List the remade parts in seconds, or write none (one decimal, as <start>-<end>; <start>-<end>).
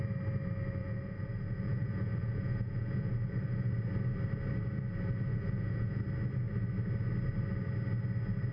0.8-3.7; 5.3-6.0